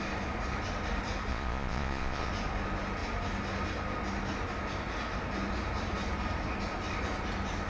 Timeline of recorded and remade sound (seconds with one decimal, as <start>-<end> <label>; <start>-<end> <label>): 0.0-1.3 recorded; 1.3-2.3 remade; 2.3-7.7 recorded